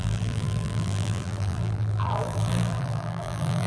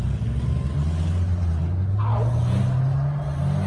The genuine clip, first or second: second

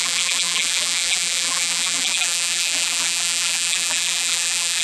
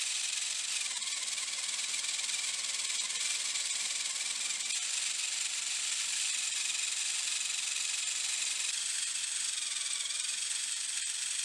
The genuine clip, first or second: second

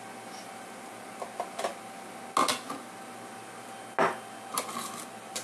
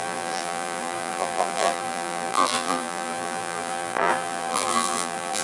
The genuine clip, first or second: first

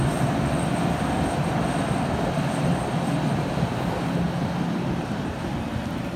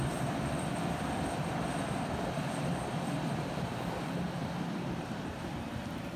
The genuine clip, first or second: first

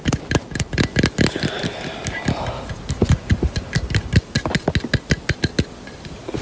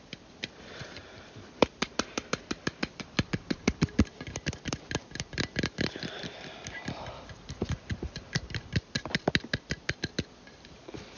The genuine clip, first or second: first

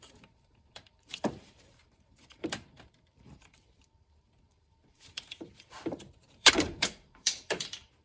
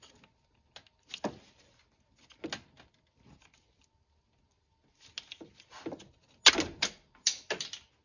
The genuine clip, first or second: second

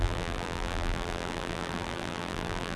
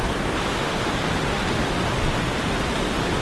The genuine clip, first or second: second